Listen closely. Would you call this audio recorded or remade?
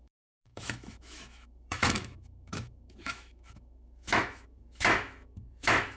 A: remade